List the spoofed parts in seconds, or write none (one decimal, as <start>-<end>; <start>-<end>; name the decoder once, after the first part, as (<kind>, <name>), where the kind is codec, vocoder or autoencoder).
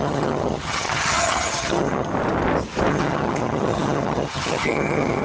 0.0-2.1 (vocoder, HiFi-GAN); 2.9-5.2